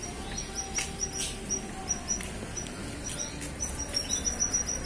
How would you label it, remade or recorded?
recorded